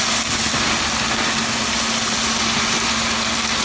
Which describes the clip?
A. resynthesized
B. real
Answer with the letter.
B